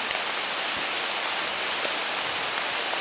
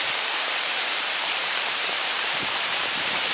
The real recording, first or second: first